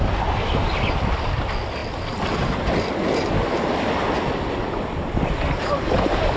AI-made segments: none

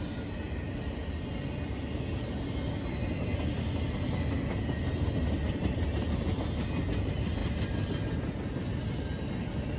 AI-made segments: none

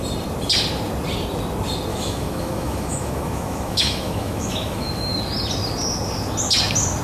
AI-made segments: 1.9-5.1

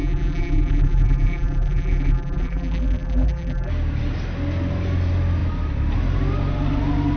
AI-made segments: 0.0-3.7

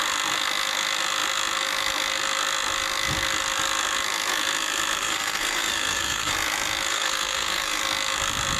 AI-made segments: 5.0-6.3; 6.9-7.8

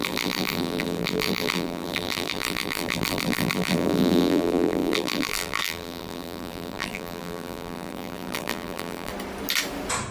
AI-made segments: 0.0-9.1